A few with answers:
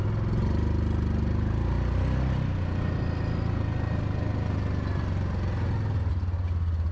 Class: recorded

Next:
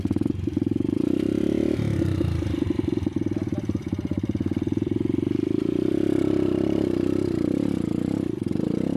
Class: remade